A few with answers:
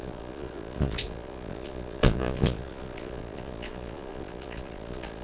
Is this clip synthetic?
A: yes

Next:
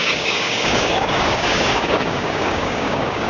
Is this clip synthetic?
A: yes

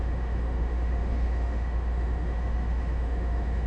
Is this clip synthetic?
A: yes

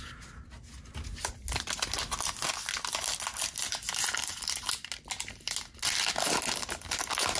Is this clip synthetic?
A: no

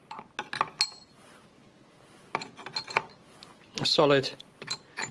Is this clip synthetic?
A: no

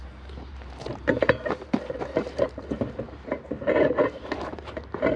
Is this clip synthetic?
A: yes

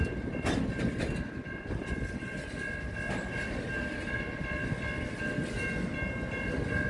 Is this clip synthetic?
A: no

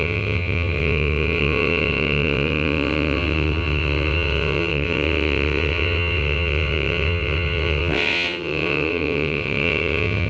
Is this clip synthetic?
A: yes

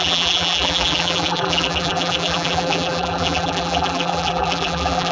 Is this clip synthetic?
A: yes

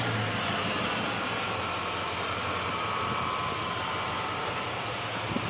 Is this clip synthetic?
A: no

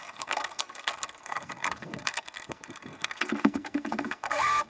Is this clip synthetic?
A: yes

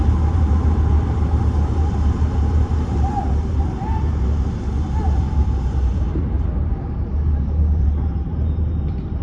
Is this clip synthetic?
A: yes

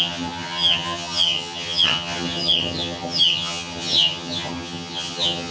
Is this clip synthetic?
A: yes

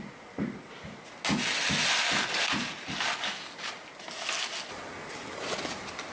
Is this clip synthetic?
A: no